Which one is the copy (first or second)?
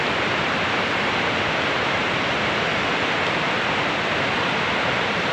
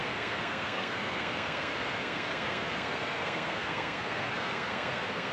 second